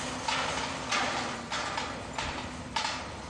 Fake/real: real